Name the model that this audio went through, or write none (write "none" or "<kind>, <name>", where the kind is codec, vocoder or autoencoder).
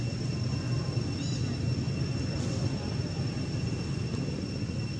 none